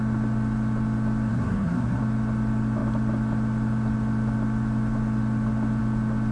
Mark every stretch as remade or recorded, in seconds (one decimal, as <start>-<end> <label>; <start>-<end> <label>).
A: 0.0-1.3 recorded; 1.3-2.0 remade; 2.0-6.3 recorded